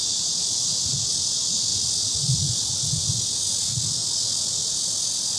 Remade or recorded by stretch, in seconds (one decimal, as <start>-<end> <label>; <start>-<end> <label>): 0.0-5.4 recorded